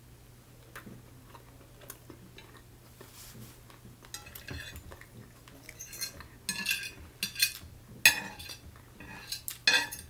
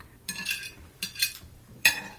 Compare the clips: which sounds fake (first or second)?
second